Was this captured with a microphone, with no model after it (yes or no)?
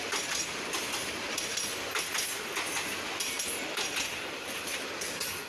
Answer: yes